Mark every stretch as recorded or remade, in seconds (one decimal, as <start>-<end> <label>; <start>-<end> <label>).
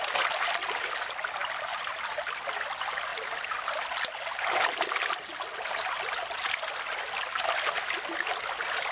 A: 0.0-8.9 recorded